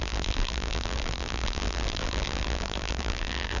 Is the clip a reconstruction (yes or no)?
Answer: yes